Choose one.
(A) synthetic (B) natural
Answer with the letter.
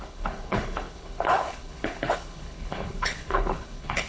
A